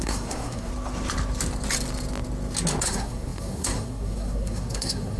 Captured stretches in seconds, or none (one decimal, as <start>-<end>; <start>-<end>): 0.7-2.8